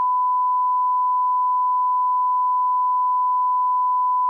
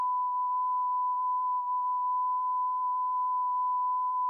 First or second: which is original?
first